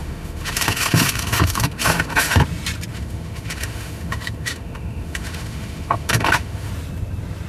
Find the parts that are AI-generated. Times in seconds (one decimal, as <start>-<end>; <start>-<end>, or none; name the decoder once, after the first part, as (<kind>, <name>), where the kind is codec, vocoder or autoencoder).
0.0-2.4 (autoencoder, DAC-VAE); 2.9-6.7